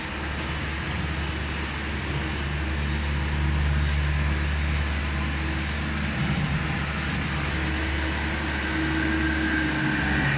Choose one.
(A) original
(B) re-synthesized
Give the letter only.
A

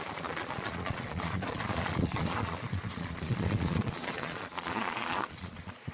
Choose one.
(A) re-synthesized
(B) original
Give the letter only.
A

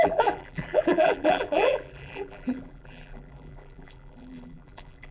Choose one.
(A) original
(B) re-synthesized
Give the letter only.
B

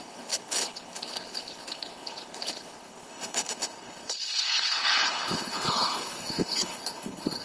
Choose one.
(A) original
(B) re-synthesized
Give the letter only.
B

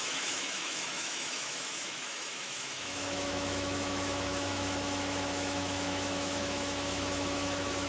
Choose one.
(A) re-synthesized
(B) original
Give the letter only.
A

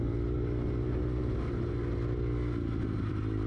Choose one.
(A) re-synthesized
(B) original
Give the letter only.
B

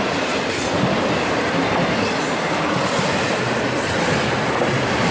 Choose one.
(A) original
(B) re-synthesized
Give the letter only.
B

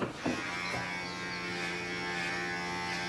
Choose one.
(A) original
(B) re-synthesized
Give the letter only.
A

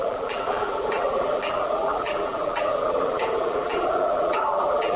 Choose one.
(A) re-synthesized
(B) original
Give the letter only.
A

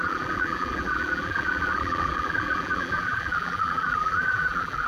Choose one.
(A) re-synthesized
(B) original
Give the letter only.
A